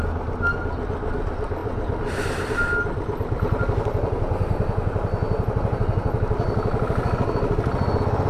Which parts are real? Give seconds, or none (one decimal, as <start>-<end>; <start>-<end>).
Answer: 0.0-8.3